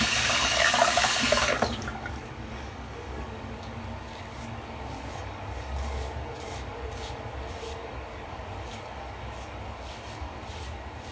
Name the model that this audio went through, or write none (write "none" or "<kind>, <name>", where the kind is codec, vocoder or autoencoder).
codec, DAC